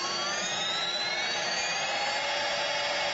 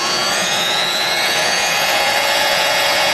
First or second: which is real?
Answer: first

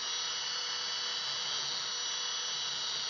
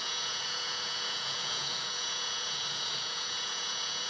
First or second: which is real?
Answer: first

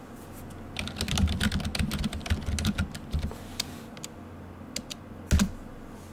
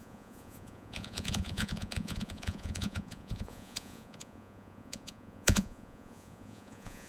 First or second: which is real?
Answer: first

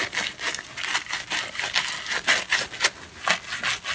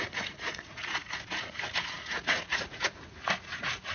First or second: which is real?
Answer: first